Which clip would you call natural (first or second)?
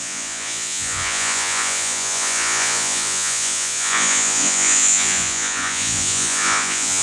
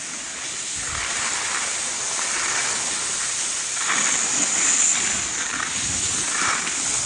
second